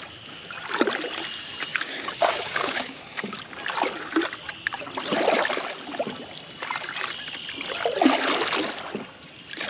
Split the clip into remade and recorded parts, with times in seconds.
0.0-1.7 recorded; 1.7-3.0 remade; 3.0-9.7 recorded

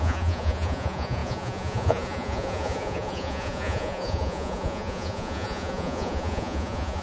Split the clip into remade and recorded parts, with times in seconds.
0.0-7.0 remade

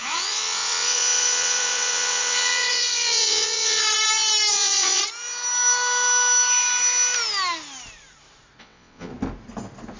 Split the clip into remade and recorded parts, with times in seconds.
0.0-3.8 remade; 3.8-4.5 recorded; 4.5-5.0 remade; 5.0-8.6 recorded; 8.6-9.1 remade; 9.1-10.0 recorded

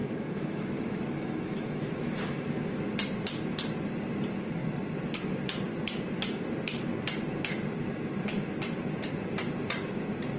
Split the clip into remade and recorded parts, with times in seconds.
0.0-2.9 remade; 2.9-10.4 recorded

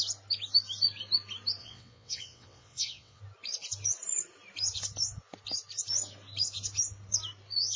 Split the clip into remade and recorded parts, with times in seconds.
0.0-1.6 recorded; 1.6-3.2 remade; 3.2-7.8 recorded